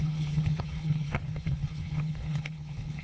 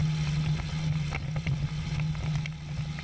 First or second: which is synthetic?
first